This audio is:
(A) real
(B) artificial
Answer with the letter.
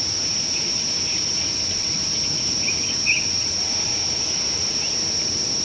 A